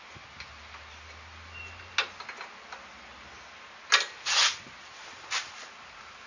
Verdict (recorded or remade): recorded